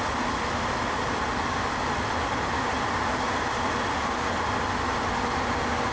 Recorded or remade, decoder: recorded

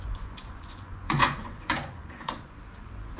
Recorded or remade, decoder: remade, vocoder, Vocos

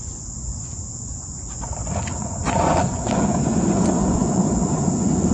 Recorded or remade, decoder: remade, vocoder, Vocos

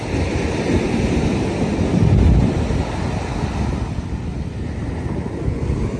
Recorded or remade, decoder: recorded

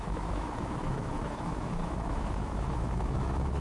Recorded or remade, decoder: remade, autoencoder, DAC-VAE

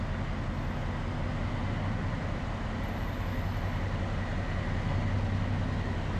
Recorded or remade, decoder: recorded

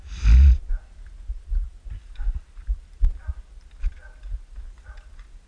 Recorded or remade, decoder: recorded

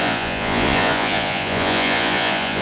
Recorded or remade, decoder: remade, vocoder, Vocos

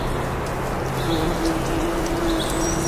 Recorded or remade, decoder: recorded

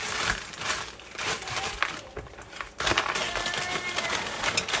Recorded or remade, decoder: recorded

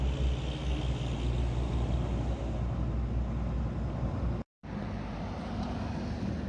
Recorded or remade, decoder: recorded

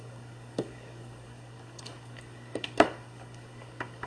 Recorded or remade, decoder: remade, codec, DAC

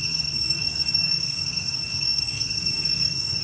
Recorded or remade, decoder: remade, codec, SNAC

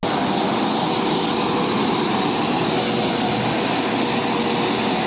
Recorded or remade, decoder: recorded